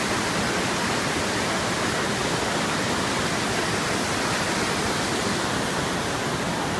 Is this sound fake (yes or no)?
no